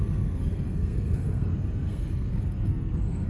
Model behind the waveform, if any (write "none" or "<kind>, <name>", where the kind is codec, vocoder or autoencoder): codec, SNAC